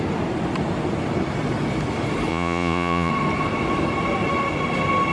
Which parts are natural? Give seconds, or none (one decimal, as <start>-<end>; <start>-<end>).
0.0-2.3; 3.1-5.1